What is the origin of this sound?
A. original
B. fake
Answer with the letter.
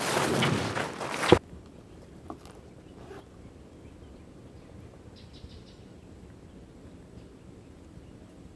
A